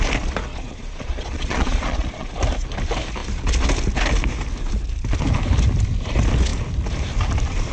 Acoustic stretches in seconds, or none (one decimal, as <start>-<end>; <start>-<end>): 0.0-0.5; 2.3-7.7